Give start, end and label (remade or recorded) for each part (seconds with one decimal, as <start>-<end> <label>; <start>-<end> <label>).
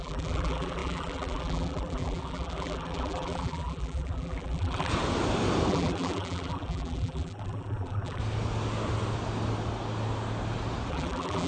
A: 0.0-4.9 remade; 4.9-5.7 recorded; 5.7-8.2 remade; 8.2-10.9 recorded; 10.9-11.5 remade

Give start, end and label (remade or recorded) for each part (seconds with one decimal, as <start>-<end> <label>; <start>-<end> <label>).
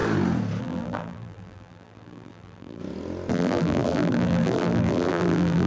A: 0.0-0.6 recorded; 0.6-2.8 remade; 2.8-3.3 recorded; 3.3-5.7 remade